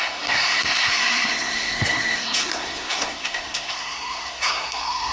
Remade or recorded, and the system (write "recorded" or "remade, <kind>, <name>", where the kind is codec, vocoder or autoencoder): remade, codec, SNAC